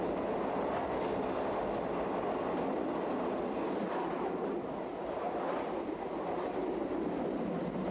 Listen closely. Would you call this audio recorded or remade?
recorded